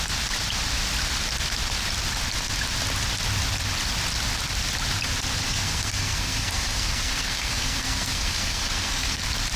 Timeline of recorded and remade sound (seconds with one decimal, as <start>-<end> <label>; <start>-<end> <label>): 0.0-5.4 recorded; 5.4-9.2 remade; 9.2-9.6 recorded

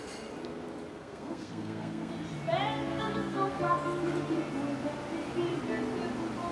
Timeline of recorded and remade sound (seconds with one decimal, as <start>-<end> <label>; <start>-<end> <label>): 0.0-0.9 recorded; 0.9-2.1 remade; 2.1-2.9 recorded; 2.9-3.6 remade; 3.6-6.5 recorded

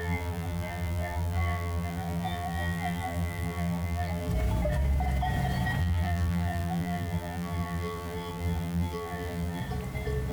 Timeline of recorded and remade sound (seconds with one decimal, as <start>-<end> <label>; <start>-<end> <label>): 0.0-4.3 remade; 4.3-5.8 recorded; 5.8-9.6 remade; 9.6-10.3 recorded

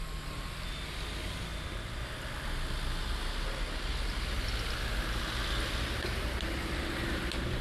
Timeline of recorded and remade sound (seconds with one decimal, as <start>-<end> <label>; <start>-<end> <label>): 0.0-7.6 recorded